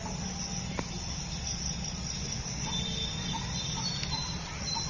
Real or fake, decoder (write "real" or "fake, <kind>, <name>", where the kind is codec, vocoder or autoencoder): real